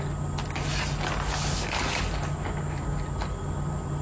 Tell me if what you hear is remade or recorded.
recorded